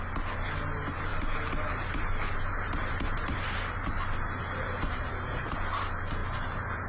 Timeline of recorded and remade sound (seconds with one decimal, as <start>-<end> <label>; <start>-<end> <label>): 0.0-2.5 recorded; 2.5-5.5 remade; 5.5-6.2 recorded; 6.2-6.9 remade